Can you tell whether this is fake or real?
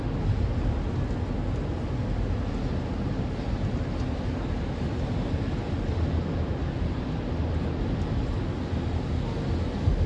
real